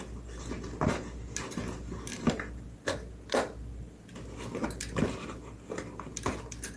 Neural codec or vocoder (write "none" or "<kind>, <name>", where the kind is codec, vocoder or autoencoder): none